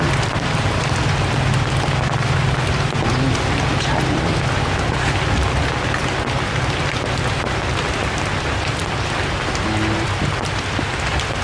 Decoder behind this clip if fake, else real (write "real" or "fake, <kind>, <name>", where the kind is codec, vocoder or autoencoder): real